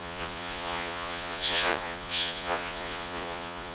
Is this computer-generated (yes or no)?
yes